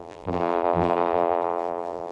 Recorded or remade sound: remade